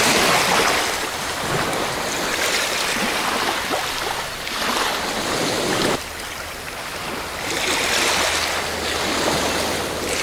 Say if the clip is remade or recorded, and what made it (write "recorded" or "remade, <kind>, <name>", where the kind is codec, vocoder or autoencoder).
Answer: recorded